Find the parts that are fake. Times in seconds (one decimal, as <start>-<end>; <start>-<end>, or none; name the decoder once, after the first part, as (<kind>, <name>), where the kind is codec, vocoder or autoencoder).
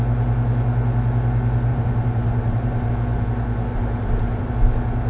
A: 1.7-2.9 (vocoder, BigVGAN v2); 3.7-4.5